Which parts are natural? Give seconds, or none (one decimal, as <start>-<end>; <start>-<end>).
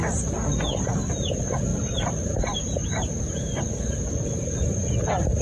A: 0.0-1.7; 4.9-5.4